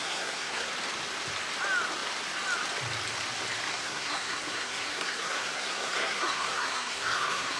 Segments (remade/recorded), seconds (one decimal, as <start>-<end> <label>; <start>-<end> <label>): 0.0-0.7 remade; 0.7-3.7 recorded; 3.7-7.6 remade

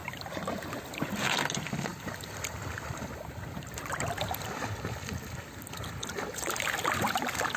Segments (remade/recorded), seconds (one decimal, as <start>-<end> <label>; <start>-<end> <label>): 0.0-0.8 remade; 0.8-1.9 recorded; 1.9-5.7 remade; 5.7-7.6 recorded